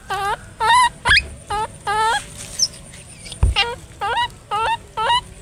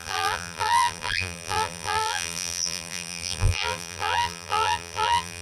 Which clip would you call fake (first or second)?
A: second